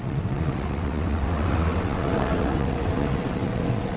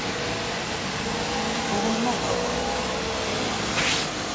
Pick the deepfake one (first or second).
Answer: first